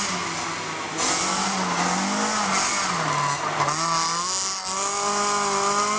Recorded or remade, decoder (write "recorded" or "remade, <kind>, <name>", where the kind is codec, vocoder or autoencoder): recorded